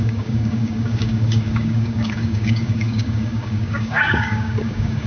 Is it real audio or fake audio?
fake